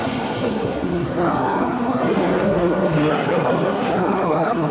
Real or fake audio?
fake